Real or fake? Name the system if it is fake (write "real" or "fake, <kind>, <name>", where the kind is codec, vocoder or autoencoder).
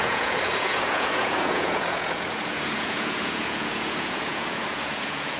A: fake, vocoder, Vocos